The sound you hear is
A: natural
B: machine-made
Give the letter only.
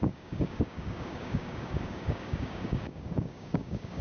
B